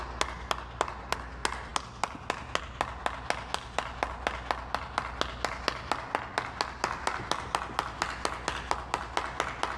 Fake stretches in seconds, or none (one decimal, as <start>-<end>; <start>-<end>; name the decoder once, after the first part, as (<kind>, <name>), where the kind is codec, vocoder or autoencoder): none